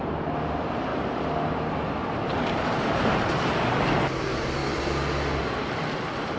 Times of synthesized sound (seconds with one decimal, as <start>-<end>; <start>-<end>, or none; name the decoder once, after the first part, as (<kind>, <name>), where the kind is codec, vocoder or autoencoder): 0.0-0.9 (vocoder, BigVGAN v2); 2.1-4.6